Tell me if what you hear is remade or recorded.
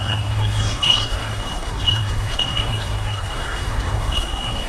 remade